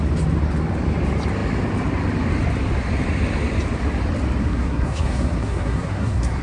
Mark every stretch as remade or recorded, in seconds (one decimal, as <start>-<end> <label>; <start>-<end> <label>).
0.0-4.4 recorded; 4.4-6.4 remade